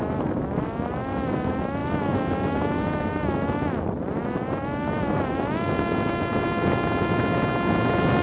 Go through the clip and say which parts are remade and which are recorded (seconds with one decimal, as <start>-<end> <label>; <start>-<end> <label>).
0.0-8.2 recorded